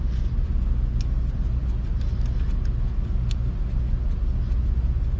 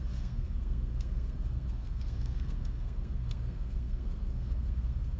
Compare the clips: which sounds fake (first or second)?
second